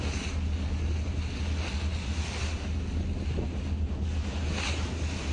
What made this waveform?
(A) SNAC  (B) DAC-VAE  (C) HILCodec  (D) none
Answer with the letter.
D